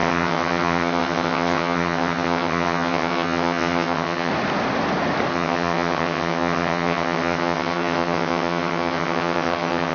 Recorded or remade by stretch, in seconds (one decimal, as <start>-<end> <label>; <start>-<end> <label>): 0.0-4.3 remade; 4.3-5.3 recorded; 5.3-9.9 remade